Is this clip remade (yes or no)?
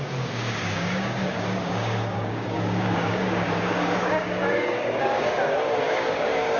yes